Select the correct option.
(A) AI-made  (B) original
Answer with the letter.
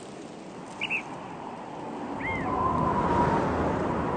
B